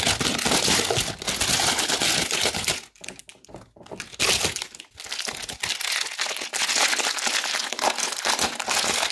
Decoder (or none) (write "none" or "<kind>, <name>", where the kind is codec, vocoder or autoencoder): none